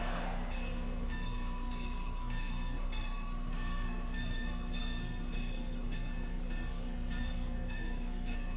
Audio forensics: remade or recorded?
remade